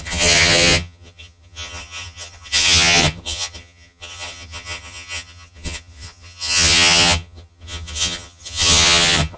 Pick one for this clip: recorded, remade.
remade